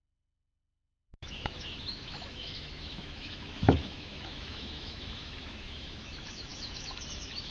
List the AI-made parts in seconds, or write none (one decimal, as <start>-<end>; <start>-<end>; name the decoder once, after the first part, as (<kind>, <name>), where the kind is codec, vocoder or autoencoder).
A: 0.0-7.5 (autoencoder, DAC-VAE)